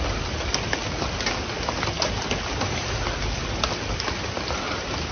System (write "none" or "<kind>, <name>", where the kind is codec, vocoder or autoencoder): none